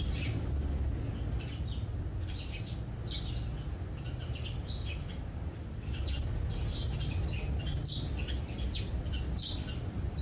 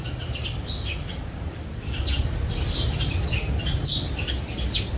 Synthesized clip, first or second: second